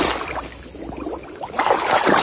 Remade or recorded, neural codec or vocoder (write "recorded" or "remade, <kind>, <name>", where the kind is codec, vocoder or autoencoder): recorded